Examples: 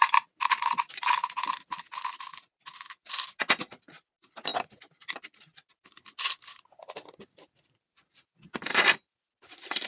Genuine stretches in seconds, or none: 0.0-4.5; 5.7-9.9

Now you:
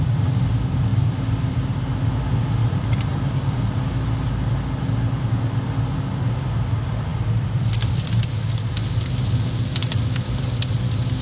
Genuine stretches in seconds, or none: 0.0-0.9; 1.7-2.6; 3.8-7.1; 8.0-11.2

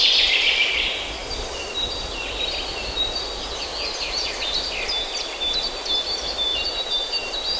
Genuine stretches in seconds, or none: 0.0-6.5

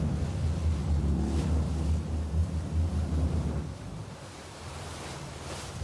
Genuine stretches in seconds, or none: 0.0-2.4; 3.5-4.0; 5.3-5.8

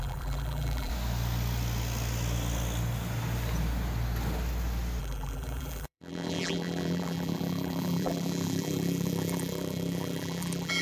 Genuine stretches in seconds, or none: 0.9-5.0

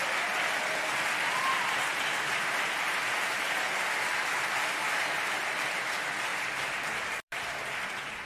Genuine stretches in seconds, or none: 0.0-1.4